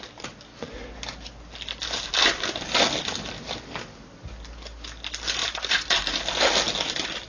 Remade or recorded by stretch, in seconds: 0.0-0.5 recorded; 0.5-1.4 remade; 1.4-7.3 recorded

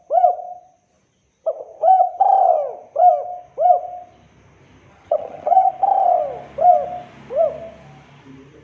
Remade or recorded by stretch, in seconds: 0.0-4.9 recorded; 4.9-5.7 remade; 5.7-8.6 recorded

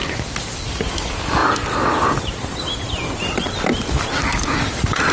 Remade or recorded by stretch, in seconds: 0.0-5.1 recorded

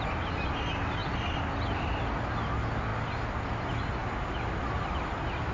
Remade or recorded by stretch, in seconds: 0.0-1.0 recorded; 1.0-2.0 remade; 2.0-4.0 recorded; 4.0-4.6 remade; 4.6-5.5 recorded

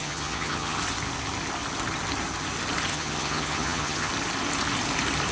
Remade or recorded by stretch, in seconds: 0.0-0.8 remade; 0.8-2.9 recorded; 2.9-4.1 remade; 4.1-5.3 recorded

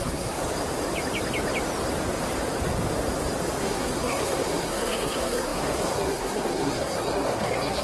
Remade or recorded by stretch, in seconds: 0.0-0.4 remade; 0.4-3.6 recorded; 3.6-7.8 remade

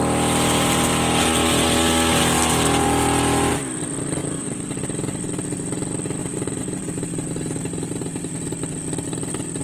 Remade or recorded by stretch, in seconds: 0.0-4.2 recorded; 4.2-4.8 remade; 4.8-6.2 recorded; 6.2-8.3 remade; 8.3-9.6 recorded

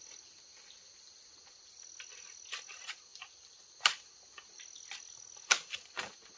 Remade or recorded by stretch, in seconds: 0.0-3.1 recorded; 3.1-3.8 remade; 3.8-6.4 recorded